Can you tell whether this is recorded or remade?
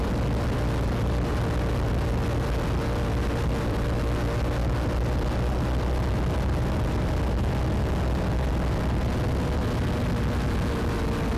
recorded